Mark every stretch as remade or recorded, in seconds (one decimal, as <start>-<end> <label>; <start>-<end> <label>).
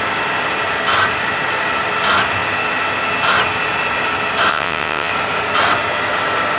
0.0-4.5 recorded; 4.5-5.1 remade; 5.1-6.6 recorded